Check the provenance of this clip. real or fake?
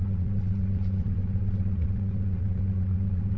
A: fake